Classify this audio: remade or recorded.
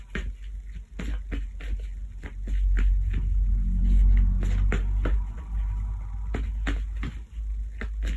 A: recorded